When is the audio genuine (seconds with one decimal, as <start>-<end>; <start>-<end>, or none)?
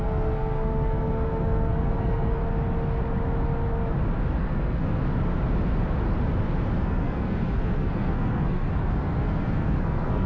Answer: 2.4-4.4; 5.0-6.8